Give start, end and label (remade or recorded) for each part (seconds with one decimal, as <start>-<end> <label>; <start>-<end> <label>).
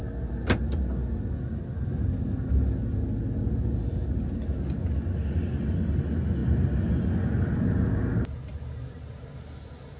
0.0-10.0 recorded